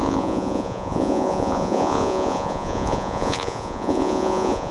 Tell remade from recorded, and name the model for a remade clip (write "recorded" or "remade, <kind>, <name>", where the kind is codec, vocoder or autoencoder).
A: remade, vocoder, Vocos